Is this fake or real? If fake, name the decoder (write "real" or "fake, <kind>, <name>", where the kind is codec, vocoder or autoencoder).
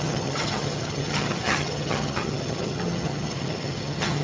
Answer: fake, vocoder, HiFi-GAN